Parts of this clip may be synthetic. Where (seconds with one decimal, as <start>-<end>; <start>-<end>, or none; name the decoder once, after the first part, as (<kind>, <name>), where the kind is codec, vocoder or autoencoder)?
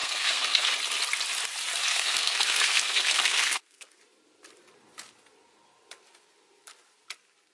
0.0-0.7 (codec, SNAC); 1.9-4.0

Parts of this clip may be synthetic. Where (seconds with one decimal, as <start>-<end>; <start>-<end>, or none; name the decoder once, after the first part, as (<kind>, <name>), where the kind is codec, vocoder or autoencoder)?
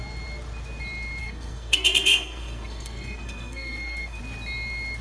1.2-4.2 (codec, SNAC)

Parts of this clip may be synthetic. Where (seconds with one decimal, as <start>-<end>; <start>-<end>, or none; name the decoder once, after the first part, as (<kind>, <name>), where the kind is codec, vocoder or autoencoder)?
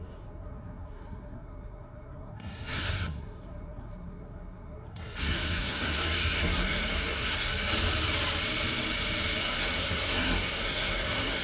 0.0-7.5 (codec, SNAC); 9.4-11.4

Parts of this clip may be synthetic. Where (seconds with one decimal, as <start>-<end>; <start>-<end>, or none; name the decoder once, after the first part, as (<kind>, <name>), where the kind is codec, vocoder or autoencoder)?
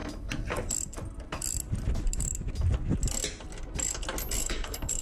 4.4-5.0 (codec, SNAC)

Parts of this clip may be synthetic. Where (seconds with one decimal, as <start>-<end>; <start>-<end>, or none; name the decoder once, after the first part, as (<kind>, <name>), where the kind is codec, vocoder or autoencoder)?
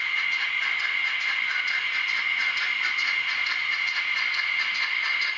none